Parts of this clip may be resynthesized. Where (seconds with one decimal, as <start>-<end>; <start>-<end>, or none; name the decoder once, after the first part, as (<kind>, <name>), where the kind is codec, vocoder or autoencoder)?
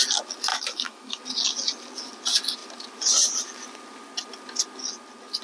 0.5-1.2 (autoencoder, DAC-VAE)